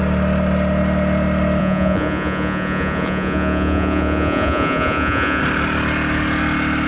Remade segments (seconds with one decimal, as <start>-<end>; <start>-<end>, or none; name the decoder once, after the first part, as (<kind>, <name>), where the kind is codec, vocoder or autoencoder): 1.6-5.4 (vocoder, Vocos)